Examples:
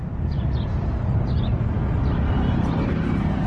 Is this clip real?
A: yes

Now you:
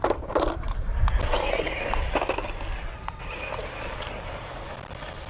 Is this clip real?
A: yes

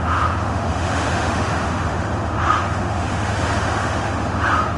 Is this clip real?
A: no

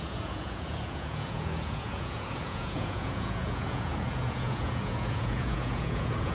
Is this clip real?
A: no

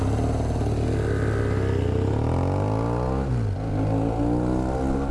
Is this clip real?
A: yes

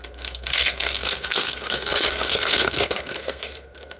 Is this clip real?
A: no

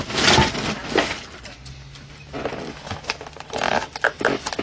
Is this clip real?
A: yes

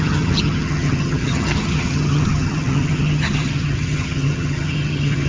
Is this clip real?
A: no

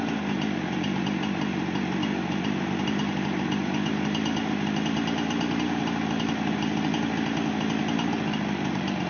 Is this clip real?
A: yes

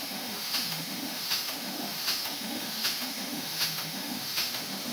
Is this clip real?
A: no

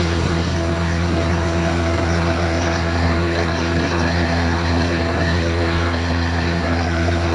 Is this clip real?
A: no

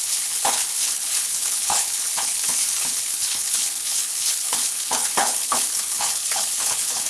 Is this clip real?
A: no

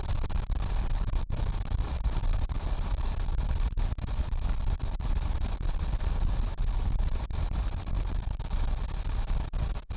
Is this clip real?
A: yes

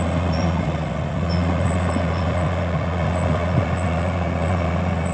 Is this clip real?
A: no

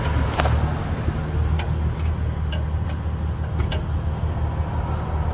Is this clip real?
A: yes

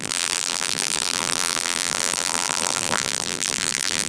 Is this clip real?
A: no